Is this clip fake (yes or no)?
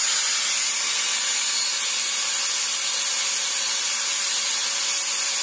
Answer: no